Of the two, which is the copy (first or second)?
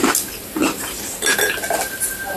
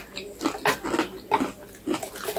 first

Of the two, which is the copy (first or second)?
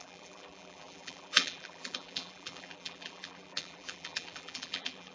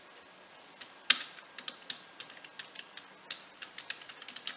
first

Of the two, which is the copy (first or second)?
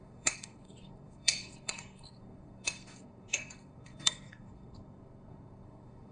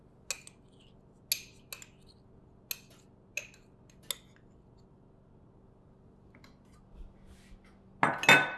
first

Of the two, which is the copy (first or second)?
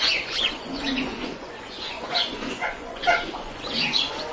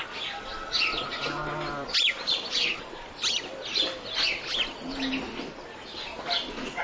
first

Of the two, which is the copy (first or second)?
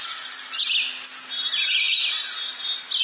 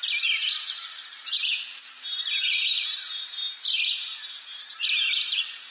second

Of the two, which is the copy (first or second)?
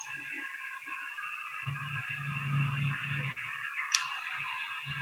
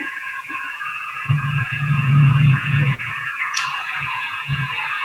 second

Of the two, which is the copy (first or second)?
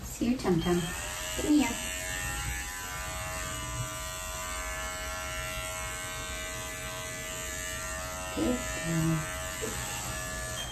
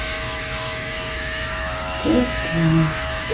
second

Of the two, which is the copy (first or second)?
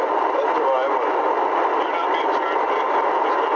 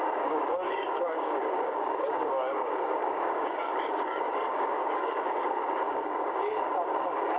second